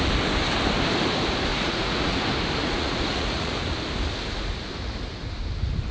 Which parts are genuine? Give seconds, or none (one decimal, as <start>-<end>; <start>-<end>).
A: 0.0-1.5; 2.2-2.6; 3.7-5.9